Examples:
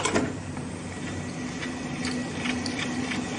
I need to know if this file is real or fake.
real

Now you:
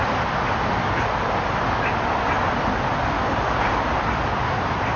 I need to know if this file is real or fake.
real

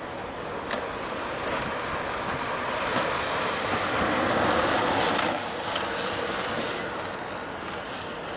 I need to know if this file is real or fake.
real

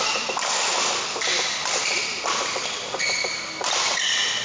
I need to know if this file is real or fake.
real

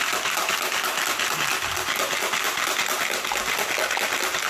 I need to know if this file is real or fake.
real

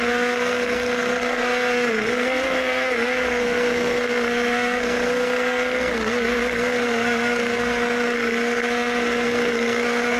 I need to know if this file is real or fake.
fake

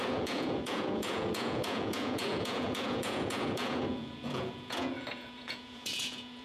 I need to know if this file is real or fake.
fake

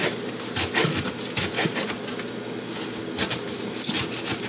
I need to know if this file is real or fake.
real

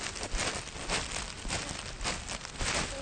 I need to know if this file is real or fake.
real